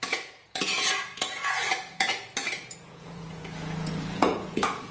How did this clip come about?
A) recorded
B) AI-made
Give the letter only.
B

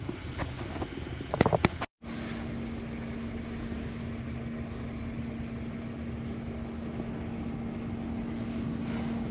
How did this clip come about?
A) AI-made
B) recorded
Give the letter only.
B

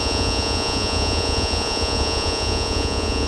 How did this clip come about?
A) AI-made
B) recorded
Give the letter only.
A